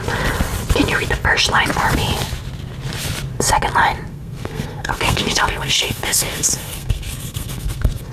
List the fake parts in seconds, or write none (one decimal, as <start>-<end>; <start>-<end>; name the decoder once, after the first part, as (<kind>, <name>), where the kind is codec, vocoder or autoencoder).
4.1-8.1 (codec, SNAC)